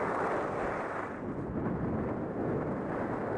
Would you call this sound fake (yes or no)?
no